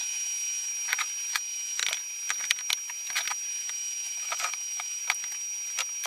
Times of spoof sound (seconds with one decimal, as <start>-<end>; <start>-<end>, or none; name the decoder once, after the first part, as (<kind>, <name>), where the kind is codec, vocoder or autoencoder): 0.0-0.7 (autoencoder, DAC-VAE); 1.3-1.8; 3.5-5.0